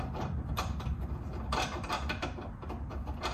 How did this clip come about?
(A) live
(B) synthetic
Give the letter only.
B